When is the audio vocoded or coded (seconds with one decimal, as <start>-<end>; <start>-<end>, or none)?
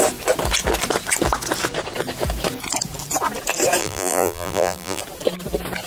3.8-5.0